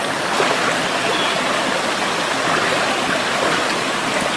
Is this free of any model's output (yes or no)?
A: yes